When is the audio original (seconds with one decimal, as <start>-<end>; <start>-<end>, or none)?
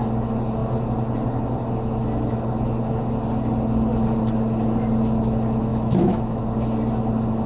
0.0-5.7; 6.4-7.5